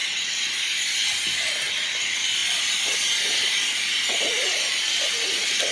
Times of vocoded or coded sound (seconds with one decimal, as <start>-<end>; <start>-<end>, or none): 0.0-0.5